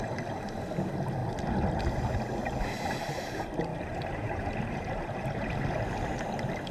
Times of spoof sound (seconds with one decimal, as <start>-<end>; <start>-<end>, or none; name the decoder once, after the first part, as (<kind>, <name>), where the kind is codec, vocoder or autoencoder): 3.7-5.5 (vocoder, BigVGAN v2)